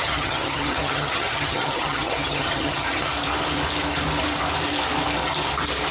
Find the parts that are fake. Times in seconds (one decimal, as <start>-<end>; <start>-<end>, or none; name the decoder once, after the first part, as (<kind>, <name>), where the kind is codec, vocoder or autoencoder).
0.0-3.1 (vocoder, HiFi-GAN)